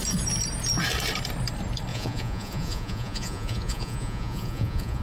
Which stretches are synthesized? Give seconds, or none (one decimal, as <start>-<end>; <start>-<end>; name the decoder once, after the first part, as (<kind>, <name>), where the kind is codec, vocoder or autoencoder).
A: 1.9-5.0 (vocoder, Vocos)